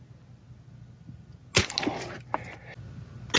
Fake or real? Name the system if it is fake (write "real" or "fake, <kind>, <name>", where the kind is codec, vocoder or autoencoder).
real